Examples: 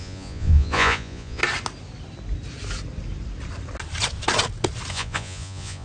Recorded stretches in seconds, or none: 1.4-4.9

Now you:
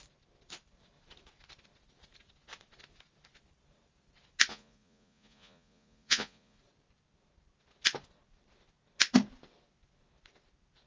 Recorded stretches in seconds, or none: 0.0-4.5; 6.6-10.9

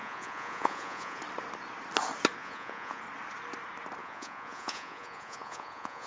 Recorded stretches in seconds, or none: 1.2-2.4; 3.0-4.0

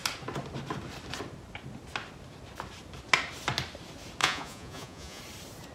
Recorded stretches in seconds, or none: 0.0-4.2; 5.2-5.7

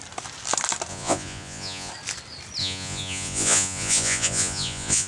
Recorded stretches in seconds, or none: 0.0-0.9; 1.9-2.6

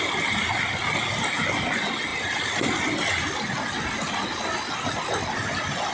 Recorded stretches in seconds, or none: 0.0-5.9